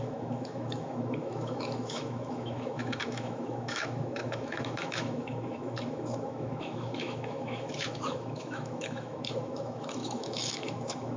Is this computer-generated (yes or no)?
yes